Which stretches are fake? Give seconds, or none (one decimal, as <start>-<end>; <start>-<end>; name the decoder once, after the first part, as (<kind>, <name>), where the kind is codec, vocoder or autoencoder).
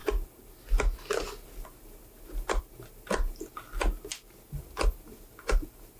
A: none